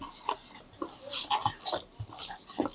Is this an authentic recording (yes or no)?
yes